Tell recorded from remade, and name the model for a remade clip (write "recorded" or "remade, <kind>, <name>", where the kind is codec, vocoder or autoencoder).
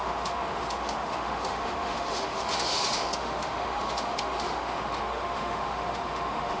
remade, autoencoder, DAC-VAE